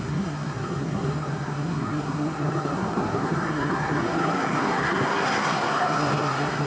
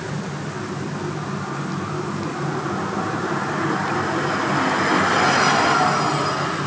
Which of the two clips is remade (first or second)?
first